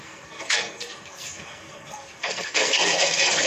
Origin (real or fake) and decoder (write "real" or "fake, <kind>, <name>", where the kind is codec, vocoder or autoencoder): fake, codec, SNAC